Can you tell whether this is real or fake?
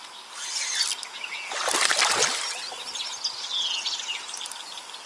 real